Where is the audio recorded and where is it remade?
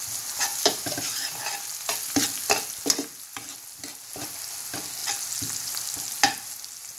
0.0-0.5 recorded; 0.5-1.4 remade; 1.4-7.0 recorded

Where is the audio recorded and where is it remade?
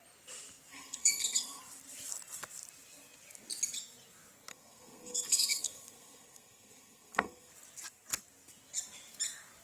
0.0-0.7 recorded; 0.7-1.6 remade; 1.6-4.5 recorded; 4.5-7.5 remade; 7.5-9.6 recorded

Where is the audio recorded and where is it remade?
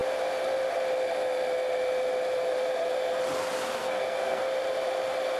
0.0-3.8 recorded; 3.8-4.4 remade; 4.4-5.4 recorded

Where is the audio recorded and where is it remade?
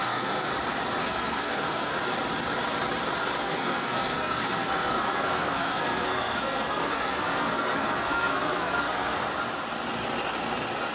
0.0-0.5 remade; 0.5-1.0 recorded; 1.0-1.9 remade; 1.9-3.4 recorded; 3.4-9.2 remade; 9.2-10.9 recorded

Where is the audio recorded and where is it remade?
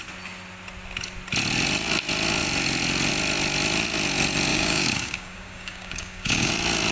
0.0-4.5 recorded; 4.5-6.5 remade; 6.5-6.9 recorded